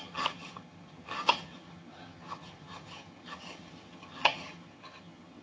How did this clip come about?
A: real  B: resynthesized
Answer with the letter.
B